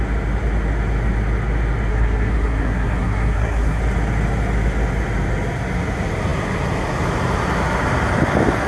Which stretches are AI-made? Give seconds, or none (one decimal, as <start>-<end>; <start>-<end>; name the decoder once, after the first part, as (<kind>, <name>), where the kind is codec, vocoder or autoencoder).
1.9-3.8 (codec, SNAC)